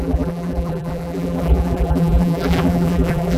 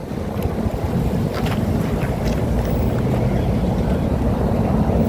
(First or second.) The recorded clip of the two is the second